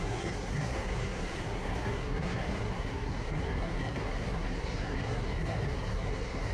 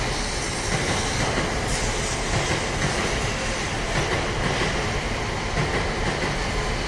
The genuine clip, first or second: second